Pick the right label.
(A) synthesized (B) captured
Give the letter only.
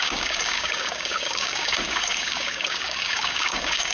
A